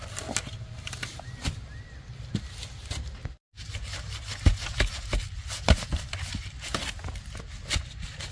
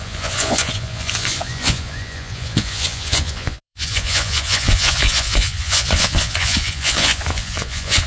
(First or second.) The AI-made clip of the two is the second